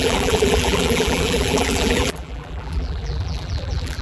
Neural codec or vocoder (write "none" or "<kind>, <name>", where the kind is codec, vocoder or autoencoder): vocoder, BigVGAN v2